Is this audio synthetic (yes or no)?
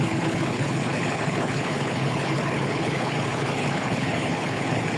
yes